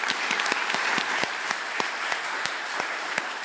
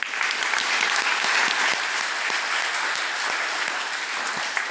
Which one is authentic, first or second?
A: second